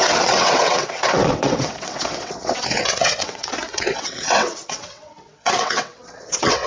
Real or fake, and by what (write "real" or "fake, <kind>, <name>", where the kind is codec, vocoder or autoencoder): fake, vocoder, WaveNeXt